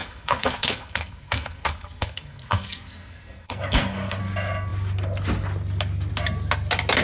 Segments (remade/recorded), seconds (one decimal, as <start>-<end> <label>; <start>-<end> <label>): 0.0-4.2 remade; 4.2-7.0 recorded

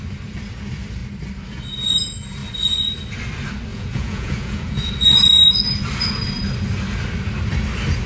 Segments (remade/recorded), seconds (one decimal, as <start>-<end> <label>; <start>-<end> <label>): 0.0-3.7 recorded; 3.7-4.9 remade; 4.9-8.1 recorded